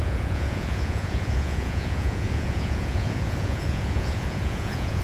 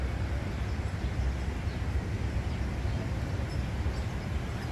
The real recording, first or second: second